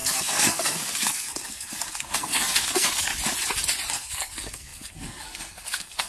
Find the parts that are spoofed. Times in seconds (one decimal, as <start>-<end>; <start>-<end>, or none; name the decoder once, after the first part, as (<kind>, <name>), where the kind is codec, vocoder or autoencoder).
0.0-3.1 (codec, SNAC); 3.9-6.1